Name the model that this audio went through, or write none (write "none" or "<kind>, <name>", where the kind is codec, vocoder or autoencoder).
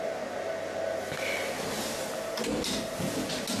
none